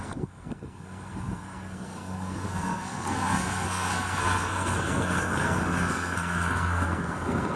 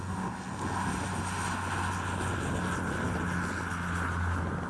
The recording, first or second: second